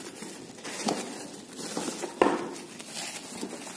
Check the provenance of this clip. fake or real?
real